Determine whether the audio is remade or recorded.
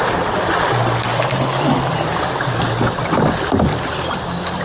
recorded